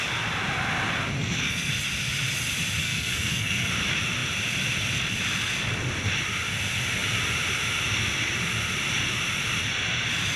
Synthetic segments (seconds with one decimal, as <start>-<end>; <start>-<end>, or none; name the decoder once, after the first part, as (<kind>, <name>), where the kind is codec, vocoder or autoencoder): 1.2-1.7 (codec, SNAC); 2.8-3.7